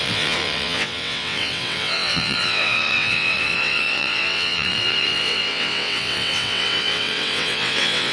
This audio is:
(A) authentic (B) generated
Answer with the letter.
B